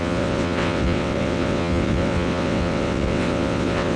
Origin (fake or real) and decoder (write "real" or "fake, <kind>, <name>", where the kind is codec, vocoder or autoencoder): fake, vocoder, WaveNeXt